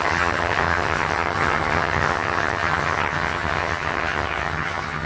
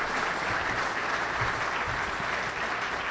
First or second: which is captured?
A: second